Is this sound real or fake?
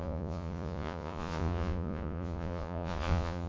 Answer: fake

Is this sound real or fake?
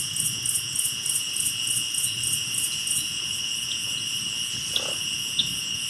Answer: fake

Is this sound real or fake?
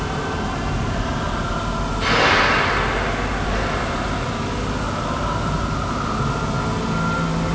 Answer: real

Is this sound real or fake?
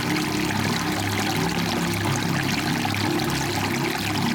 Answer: real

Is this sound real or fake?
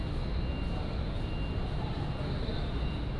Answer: real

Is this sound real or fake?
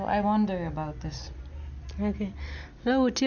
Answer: real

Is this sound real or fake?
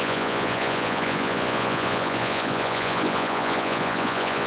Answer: fake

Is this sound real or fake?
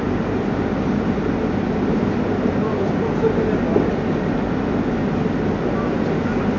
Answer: real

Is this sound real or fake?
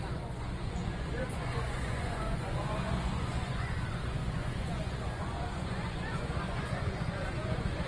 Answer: fake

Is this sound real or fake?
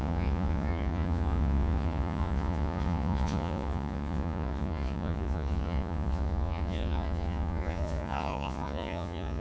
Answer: fake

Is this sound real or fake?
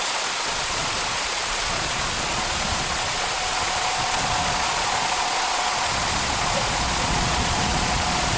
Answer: fake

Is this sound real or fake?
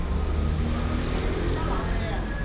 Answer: real